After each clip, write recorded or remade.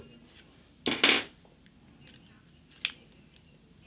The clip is recorded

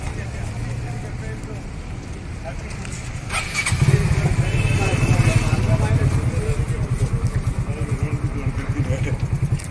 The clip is recorded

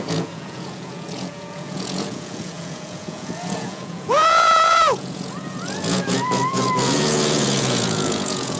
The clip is remade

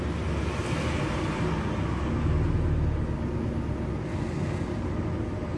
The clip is recorded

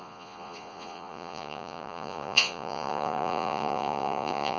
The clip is remade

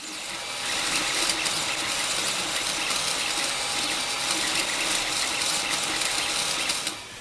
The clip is recorded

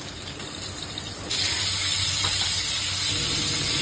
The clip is recorded